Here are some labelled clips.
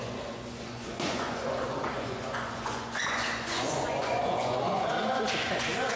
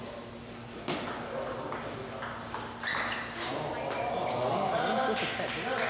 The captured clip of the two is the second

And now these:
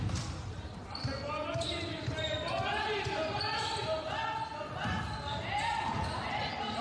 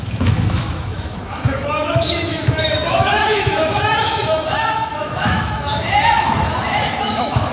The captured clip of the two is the first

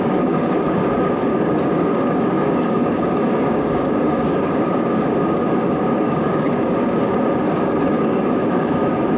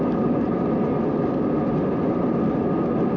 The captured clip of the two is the second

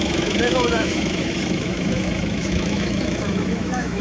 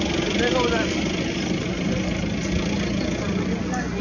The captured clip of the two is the second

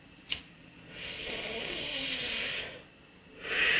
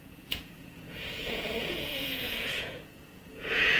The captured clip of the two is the first